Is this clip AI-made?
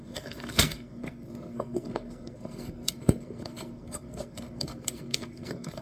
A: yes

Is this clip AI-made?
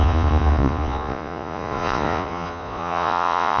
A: yes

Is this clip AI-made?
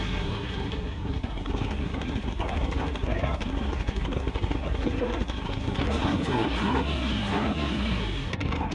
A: yes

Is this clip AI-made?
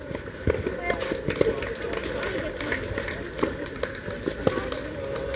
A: no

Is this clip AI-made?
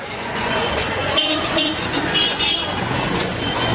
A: yes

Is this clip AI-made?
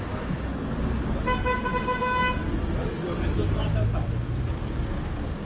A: no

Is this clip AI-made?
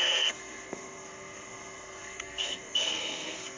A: yes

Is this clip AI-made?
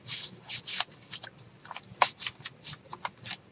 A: no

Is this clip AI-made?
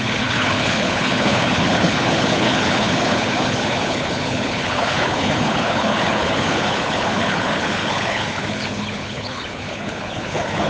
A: yes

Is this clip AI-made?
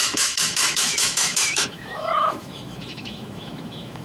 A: yes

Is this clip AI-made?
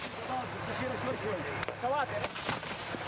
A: no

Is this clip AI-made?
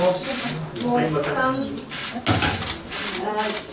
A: no